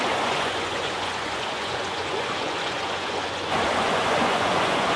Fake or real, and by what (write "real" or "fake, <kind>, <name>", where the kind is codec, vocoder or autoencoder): fake, vocoder, Vocos